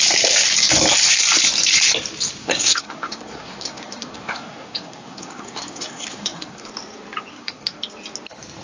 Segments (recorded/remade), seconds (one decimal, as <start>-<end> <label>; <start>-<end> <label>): 0.0-2.4 recorded; 2.4-6.7 remade; 6.7-7.3 recorded; 7.3-7.8 remade; 7.8-8.6 recorded